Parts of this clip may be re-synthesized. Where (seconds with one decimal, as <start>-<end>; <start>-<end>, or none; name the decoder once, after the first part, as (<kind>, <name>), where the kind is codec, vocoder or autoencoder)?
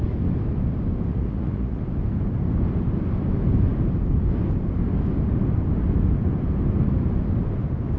1.1-1.8 (vocoder, Vocos)